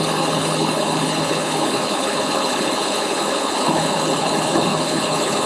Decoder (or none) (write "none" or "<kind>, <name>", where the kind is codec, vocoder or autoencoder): codec, HILCodec